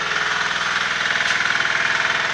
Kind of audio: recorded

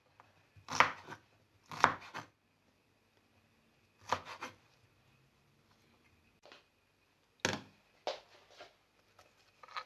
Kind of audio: recorded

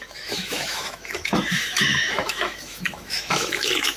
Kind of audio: remade